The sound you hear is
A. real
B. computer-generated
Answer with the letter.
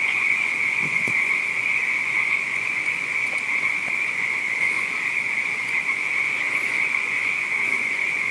B